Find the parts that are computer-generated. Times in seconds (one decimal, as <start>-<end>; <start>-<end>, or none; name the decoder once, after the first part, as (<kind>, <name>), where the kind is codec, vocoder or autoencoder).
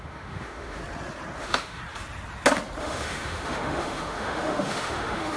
0.0-0.8 (autoencoder, DAC-VAE); 1.4-1.8; 2.8-5.4